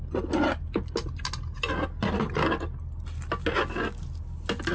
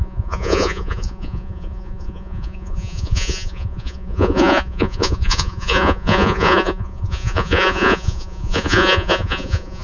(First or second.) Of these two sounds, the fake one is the second